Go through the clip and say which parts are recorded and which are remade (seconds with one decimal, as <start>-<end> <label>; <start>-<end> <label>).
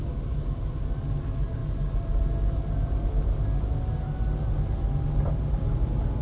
0.0-6.2 recorded